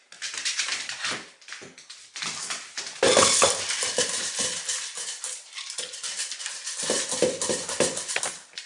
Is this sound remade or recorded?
remade